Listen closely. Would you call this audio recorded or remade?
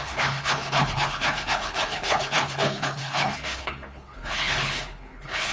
remade